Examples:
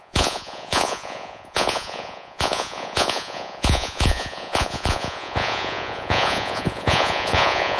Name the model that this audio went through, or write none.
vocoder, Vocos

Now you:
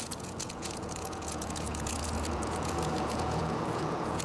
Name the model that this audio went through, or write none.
vocoder, Vocos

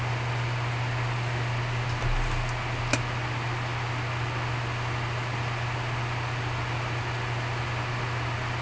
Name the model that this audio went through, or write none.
none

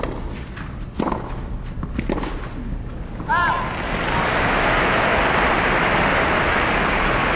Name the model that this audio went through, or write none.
none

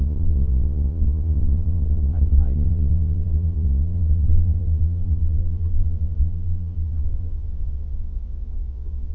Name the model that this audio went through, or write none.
vocoder, Vocos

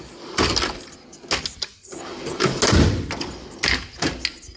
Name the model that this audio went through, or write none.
none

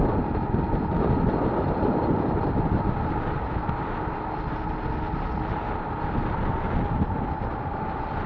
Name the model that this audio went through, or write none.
none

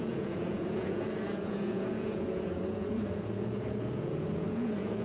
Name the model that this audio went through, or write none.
vocoder, Vocos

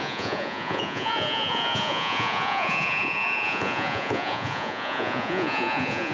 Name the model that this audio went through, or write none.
vocoder, Vocos